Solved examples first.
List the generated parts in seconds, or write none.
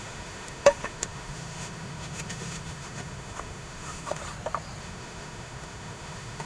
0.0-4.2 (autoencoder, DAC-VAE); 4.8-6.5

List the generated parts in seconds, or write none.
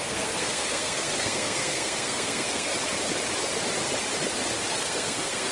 0.0-2.7 (codec, SNAC); 4.7-5.5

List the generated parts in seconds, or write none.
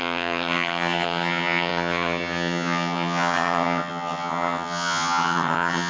0.0-5.9 (vocoder, HiFi-GAN)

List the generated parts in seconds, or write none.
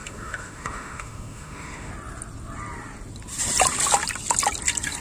0.0-1.9 (autoencoder, DAC-VAE)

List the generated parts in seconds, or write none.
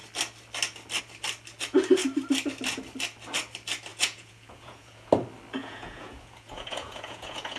3.9-5.1 (vocoder, Vocos); 5.6-7.6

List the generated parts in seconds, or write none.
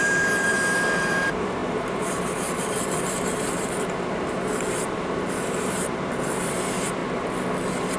0.0-7.0 (vocoder, BigVGAN v2)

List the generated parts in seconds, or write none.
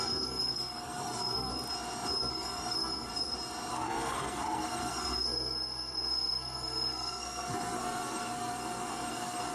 0.0-1.5 (codec, SNAC); 2.3-3.1; 3.7-9.5